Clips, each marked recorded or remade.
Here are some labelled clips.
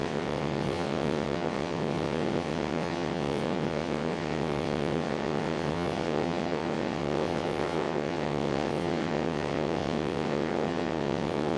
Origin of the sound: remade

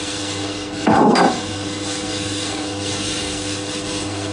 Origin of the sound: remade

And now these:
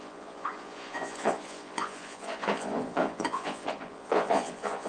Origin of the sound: remade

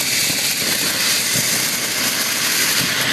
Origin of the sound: recorded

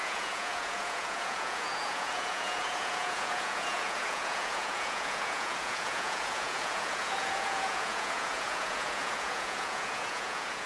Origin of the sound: remade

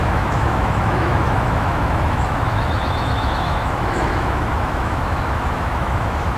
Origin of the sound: remade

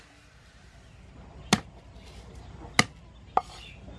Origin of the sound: recorded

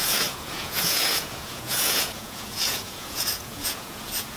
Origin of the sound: remade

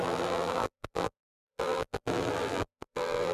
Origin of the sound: remade